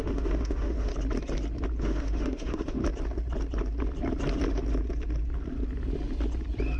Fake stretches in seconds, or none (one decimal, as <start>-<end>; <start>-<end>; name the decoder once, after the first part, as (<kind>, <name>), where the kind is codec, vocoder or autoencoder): 0.0-0.9 (autoencoder, DAC-VAE); 1.8-2.8